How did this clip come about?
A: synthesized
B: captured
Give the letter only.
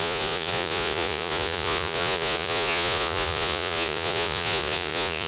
A